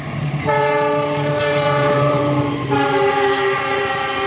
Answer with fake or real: fake